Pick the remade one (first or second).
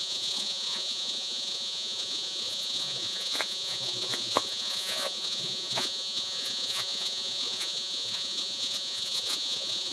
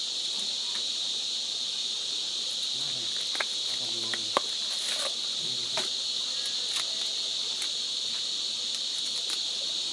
first